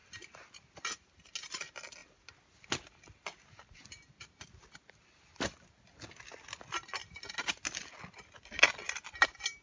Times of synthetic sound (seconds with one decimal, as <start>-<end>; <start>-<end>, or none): none